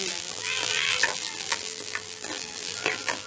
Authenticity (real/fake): fake